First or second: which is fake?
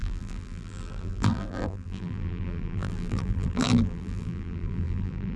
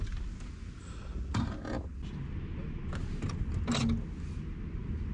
first